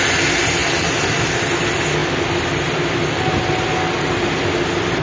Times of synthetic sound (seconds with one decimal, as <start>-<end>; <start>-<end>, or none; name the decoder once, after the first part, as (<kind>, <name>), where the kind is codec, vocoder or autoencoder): none